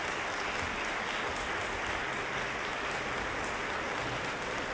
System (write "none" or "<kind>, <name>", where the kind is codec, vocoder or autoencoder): none